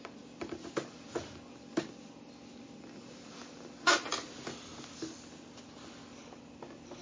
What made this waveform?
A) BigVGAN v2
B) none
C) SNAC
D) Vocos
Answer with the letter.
B